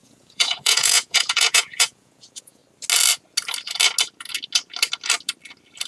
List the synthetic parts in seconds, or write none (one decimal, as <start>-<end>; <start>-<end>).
0.0-2.6